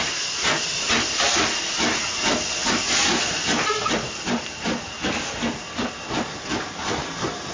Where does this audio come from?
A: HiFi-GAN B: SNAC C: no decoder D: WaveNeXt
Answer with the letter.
C